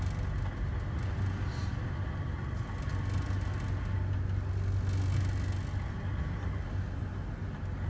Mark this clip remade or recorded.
recorded